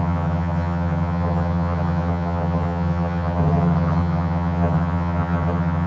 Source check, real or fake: fake